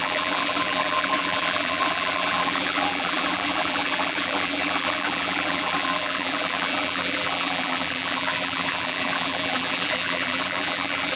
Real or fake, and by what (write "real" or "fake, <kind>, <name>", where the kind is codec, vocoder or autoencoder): fake, vocoder, BigVGAN v2